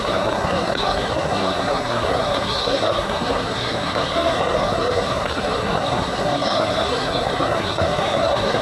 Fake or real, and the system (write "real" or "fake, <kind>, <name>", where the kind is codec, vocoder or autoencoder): fake, codec, SNAC